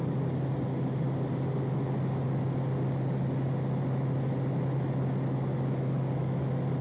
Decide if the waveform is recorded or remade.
recorded